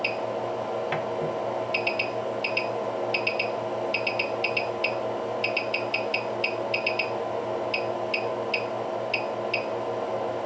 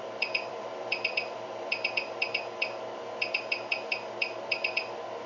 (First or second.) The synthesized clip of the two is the second